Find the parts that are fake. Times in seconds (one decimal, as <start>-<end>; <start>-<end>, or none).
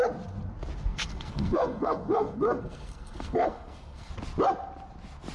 0.9-4.1